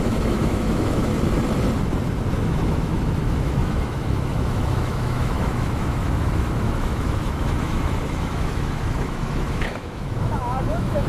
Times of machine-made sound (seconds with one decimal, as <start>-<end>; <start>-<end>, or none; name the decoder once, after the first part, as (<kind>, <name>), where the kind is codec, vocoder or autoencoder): 0.0-1.1 (autoencoder, DAC-VAE); 2.4-11.1